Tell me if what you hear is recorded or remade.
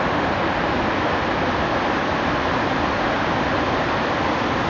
recorded